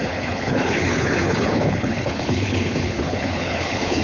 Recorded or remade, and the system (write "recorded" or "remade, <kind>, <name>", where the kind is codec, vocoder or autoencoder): remade, codec, HILCodec